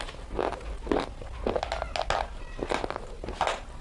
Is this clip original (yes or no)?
yes